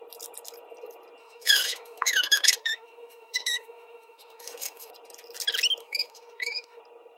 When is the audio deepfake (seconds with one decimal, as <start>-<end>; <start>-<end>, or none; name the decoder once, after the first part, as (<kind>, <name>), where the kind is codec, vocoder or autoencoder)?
1.2-4.9 (autoencoder, DAC-VAE); 5.8-6.8